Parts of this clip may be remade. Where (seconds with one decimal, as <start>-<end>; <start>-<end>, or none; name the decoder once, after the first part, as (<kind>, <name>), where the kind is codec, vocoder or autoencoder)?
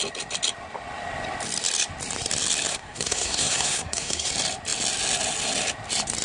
2.7-4.3 (codec, SNAC)